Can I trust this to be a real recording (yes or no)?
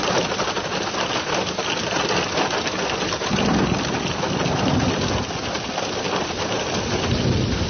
yes